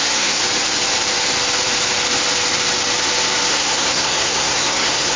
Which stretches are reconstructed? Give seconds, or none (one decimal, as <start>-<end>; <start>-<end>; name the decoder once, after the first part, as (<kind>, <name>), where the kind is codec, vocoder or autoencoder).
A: 0.0-0.4 (codec, SNAC); 3.5-5.2